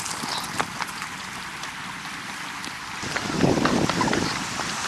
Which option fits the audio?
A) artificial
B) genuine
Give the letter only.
B